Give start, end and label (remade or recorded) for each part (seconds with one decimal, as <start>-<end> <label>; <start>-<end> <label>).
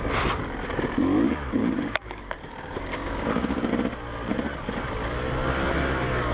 0.0-1.6 recorded; 1.6-3.7 remade; 3.7-6.3 recorded